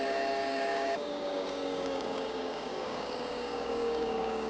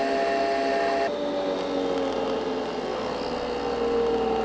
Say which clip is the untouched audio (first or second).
second